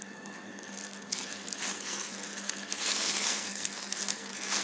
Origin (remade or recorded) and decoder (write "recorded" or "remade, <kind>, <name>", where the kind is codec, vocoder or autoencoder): remade, codec, SNAC